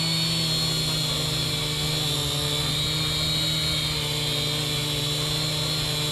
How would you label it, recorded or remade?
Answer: recorded